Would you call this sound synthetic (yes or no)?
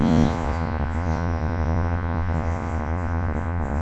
yes